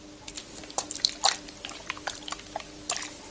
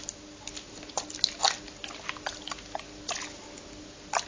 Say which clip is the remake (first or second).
first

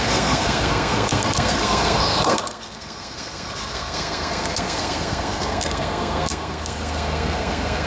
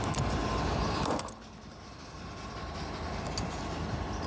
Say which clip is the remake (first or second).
first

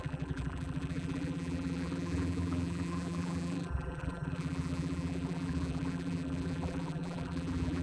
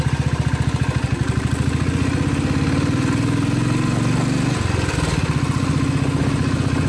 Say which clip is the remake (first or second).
first